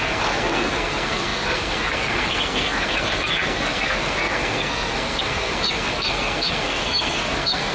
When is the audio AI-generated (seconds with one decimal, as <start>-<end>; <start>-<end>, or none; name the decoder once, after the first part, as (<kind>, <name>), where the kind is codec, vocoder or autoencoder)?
0.0-7.7 (codec, SNAC)